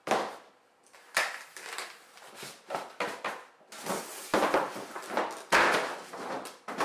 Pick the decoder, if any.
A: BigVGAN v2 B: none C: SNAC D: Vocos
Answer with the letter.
B